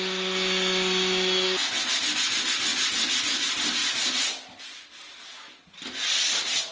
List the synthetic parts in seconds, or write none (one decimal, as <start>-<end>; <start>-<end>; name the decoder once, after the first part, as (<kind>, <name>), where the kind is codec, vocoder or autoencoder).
none